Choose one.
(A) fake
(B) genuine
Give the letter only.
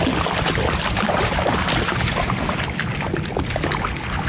B